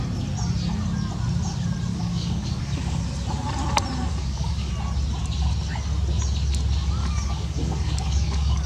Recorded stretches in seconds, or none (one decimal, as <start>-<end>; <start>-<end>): 0.0-1.9; 3.0-4.1; 4.7-7.0